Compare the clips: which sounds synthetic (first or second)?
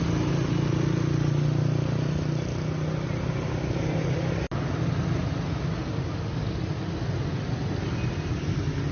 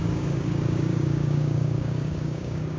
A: second